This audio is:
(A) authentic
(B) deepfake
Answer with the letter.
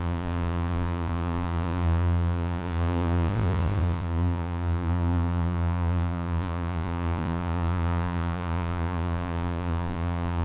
B